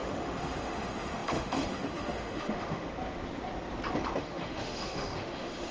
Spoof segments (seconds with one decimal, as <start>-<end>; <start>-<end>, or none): 0.0-2.9; 4.2-5.7